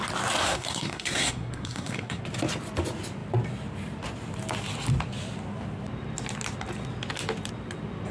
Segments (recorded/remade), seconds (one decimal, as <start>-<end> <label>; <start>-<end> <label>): 0.0-0.4 recorded; 0.4-2.2 remade; 2.2-8.1 recorded